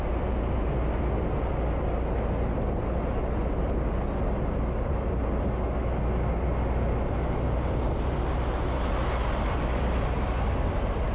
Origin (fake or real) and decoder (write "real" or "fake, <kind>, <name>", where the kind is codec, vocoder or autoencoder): real